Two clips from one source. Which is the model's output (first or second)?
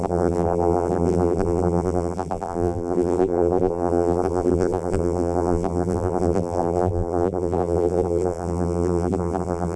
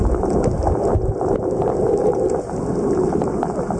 first